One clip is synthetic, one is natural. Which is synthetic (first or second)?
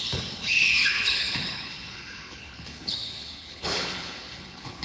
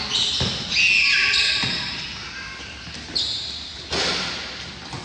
first